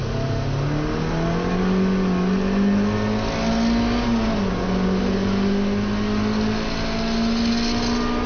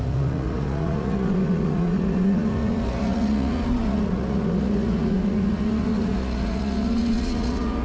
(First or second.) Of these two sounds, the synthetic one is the second